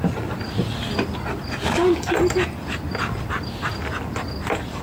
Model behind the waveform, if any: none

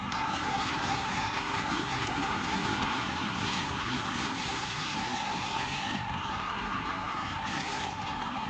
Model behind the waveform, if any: codec, SNAC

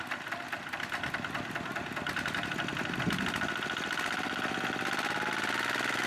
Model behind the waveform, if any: none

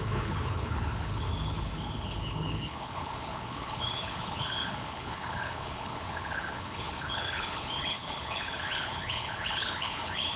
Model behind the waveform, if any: codec, HILCodec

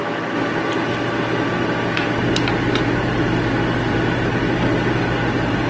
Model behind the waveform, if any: none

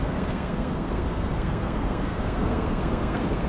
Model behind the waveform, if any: codec, SNAC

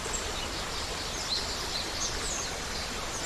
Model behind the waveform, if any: none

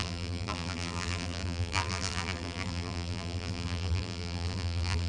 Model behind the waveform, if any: vocoder, BigVGAN v2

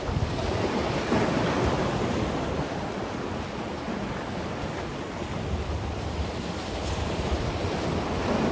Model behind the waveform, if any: none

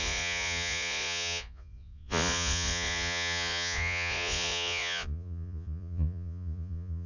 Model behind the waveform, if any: vocoder, Vocos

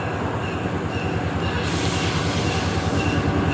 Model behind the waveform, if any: none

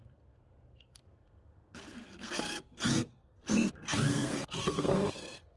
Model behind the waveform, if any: codec, SNAC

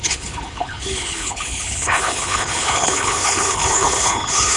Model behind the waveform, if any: codec, HILCodec